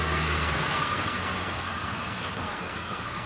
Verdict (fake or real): fake